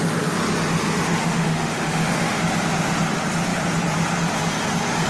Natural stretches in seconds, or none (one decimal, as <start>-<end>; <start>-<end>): 0.0-1.2; 2.4-5.1